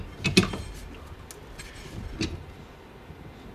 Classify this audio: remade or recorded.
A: recorded